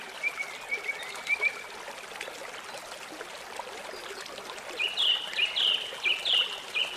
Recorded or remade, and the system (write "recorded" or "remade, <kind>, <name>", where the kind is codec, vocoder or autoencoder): recorded